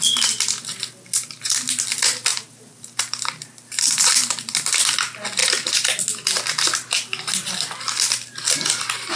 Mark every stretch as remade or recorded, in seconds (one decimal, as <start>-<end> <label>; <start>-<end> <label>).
0.0-2.3 recorded; 2.3-4.4 remade; 4.4-5.4 recorded; 5.4-6.0 remade; 6.0-9.2 recorded